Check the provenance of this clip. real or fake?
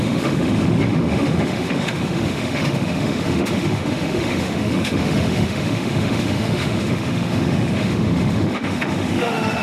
fake